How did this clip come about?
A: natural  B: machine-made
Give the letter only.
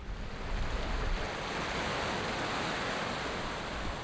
A